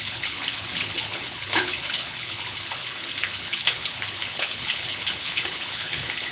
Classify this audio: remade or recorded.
remade